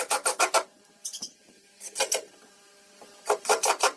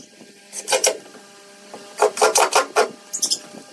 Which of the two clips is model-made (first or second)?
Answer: first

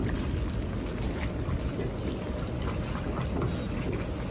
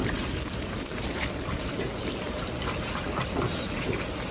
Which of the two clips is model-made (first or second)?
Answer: second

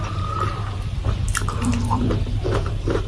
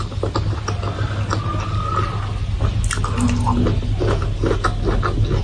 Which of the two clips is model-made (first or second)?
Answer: first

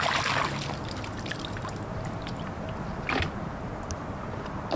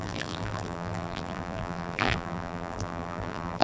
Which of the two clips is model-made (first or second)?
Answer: second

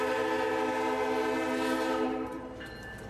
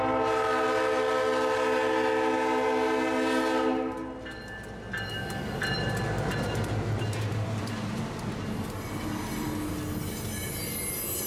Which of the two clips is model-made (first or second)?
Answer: first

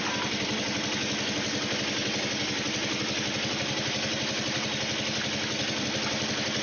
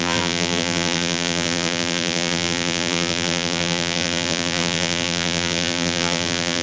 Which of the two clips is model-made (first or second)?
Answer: second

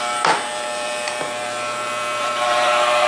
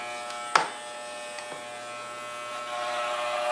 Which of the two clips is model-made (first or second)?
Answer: first